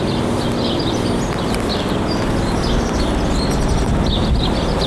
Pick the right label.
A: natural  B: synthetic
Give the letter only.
A